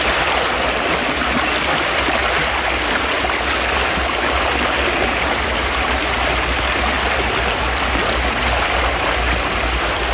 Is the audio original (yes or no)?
yes